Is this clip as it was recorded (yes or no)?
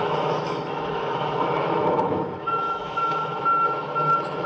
no